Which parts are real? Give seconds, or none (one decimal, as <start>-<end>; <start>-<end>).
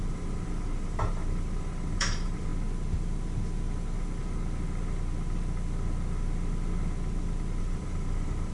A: 2.5-7.6